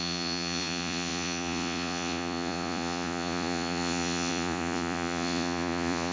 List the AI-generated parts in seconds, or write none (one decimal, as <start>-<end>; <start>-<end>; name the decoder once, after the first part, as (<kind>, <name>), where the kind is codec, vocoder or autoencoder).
0.0-6.1 (vocoder, Vocos)